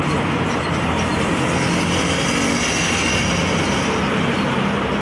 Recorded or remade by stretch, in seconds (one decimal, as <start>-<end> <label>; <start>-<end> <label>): 0.0-5.0 recorded